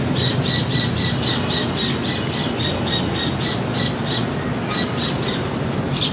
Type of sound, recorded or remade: recorded